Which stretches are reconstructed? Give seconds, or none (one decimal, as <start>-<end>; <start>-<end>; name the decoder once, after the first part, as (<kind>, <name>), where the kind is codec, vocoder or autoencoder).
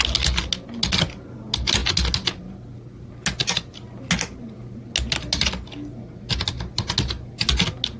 none